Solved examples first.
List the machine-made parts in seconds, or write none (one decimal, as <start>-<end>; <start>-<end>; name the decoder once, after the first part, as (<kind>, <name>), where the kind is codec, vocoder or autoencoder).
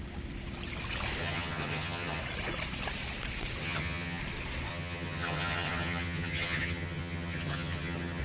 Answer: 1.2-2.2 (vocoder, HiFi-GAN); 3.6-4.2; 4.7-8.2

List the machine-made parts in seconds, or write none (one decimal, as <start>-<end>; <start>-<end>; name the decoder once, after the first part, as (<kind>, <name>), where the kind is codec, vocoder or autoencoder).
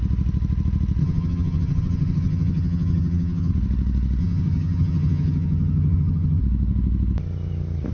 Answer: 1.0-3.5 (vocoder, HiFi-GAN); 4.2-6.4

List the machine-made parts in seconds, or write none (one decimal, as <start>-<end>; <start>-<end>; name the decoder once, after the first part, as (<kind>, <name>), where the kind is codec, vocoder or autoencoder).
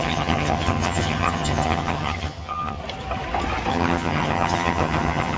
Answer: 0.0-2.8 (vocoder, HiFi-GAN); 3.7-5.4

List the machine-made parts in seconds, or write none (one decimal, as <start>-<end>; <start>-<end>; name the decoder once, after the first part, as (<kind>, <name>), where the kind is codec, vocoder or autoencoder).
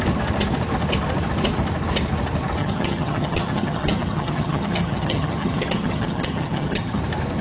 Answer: 2.6-7.0 (vocoder, HiFi-GAN)